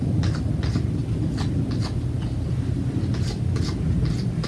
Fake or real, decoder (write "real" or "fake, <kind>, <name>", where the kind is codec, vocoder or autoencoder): real